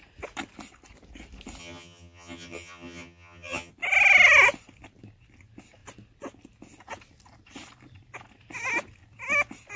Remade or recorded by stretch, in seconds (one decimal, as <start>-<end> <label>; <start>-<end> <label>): 0.0-1.6 recorded; 1.6-3.7 remade; 3.7-9.8 recorded

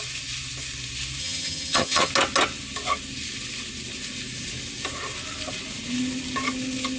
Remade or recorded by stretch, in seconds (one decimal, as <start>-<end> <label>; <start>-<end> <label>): 0.0-1.2 recorded; 1.2-2.1 remade; 2.1-7.0 recorded